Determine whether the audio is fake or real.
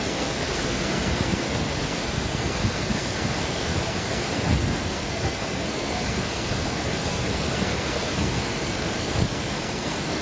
fake